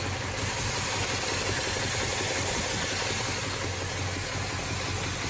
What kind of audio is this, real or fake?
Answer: real